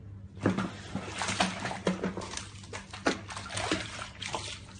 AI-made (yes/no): no